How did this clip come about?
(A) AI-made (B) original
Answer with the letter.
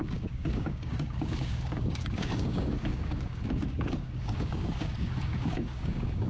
A